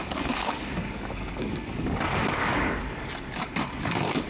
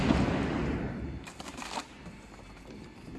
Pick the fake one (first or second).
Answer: first